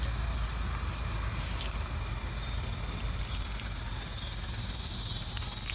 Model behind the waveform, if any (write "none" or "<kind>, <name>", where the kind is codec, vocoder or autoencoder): none